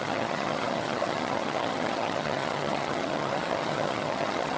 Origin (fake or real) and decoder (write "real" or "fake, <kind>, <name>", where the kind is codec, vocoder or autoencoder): fake, vocoder, HiFi-GAN